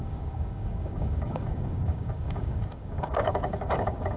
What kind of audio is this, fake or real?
fake